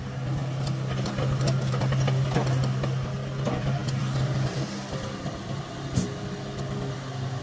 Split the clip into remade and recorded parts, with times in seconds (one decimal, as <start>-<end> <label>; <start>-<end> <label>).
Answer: 0.0-7.4 recorded